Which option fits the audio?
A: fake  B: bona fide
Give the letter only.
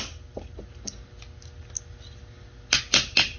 B